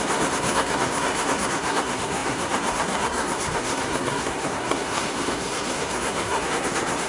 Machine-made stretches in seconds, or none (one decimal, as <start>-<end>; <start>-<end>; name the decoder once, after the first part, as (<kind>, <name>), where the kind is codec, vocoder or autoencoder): 0.0-7.1 (codec, SNAC)